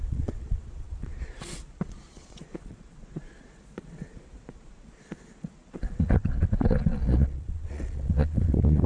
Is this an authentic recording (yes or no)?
no